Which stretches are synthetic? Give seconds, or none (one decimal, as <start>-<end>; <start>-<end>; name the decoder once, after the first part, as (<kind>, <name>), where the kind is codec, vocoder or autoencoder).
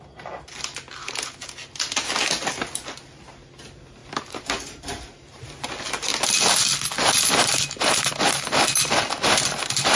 4.0-5.6 (vocoder, BigVGAN v2)